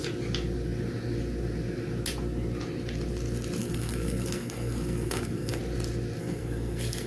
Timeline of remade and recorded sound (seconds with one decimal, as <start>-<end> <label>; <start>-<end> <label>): 0.0-3.6 recorded; 3.6-5.6 remade; 5.6-6.2 recorded; 6.2-7.1 remade